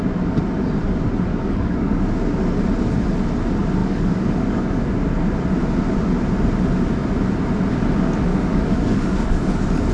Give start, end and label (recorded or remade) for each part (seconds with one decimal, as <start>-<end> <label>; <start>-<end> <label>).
0.0-1.3 recorded; 1.3-2.1 remade; 2.1-3.8 recorded; 3.8-4.8 remade; 4.8-8.3 recorded; 8.3-9.9 remade